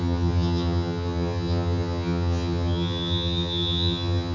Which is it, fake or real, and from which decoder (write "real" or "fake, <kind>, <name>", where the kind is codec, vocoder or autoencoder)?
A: fake, vocoder, HiFi-GAN